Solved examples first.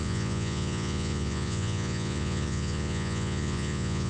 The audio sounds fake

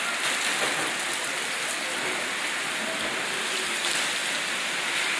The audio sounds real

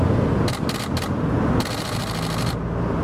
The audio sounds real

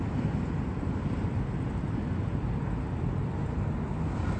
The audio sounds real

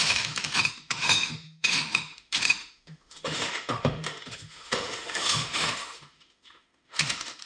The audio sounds fake